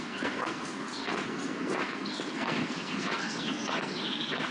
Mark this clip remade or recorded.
remade